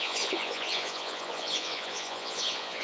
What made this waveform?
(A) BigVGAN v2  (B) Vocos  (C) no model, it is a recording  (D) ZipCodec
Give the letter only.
B